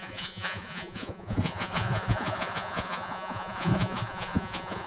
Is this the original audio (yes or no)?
no